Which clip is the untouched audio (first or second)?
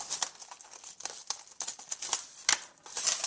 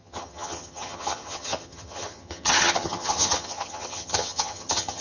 first